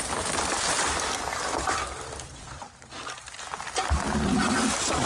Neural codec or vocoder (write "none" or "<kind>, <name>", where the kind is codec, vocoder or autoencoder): vocoder, BigVGAN v2